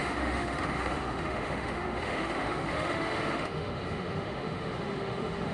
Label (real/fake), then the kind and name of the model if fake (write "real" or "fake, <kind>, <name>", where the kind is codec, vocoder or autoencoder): fake, autoencoder, DAC-VAE